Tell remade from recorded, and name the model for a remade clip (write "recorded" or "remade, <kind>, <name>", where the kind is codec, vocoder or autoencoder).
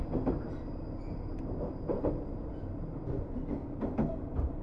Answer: recorded